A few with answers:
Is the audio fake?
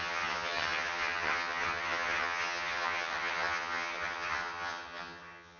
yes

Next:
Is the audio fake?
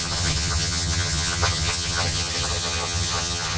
yes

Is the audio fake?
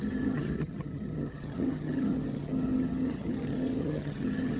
yes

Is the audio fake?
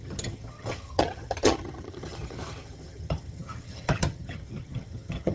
yes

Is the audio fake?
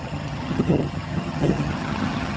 yes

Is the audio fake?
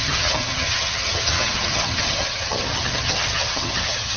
yes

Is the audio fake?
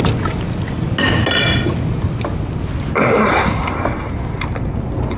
no